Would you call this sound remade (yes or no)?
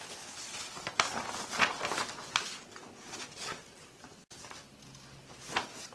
no